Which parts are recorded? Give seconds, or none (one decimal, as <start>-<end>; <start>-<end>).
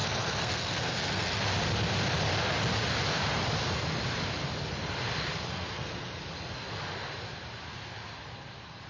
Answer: 1.4-5.5; 6.2-8.9